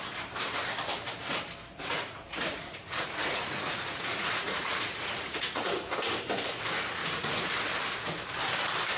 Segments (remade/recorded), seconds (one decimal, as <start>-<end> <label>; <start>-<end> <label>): 0.0-1.7 recorded; 1.7-5.7 remade; 5.7-7.0 recorded; 7.0-7.5 remade; 7.5-9.0 recorded